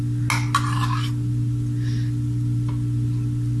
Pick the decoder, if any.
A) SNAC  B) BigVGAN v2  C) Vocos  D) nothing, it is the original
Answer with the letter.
D